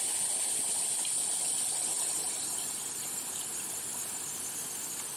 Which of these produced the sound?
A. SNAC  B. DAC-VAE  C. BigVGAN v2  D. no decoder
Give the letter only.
D